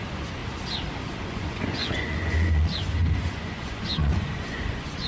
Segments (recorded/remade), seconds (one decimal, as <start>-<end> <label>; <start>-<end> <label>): 0.0-0.4 remade; 0.4-1.0 recorded; 1.0-5.1 remade